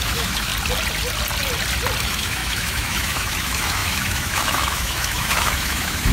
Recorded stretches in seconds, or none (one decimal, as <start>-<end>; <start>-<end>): 0.5-2.0